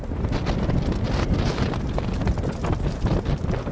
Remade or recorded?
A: recorded